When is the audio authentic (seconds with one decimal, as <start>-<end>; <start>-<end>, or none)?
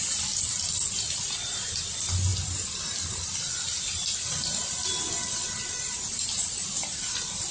0.0-7.5